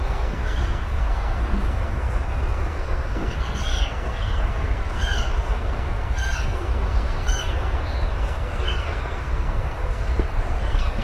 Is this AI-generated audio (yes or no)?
yes